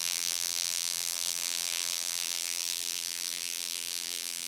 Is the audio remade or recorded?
remade